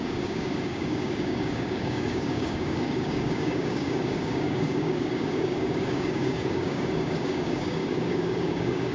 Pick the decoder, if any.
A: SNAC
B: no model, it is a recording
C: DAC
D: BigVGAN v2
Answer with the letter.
C